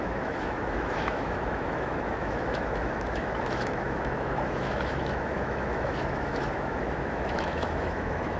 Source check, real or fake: fake